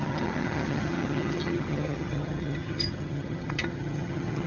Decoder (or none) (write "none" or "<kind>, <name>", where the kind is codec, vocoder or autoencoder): vocoder, HiFi-GAN